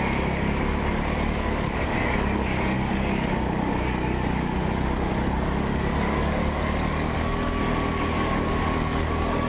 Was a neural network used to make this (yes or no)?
yes